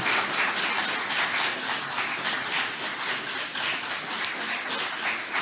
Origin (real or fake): real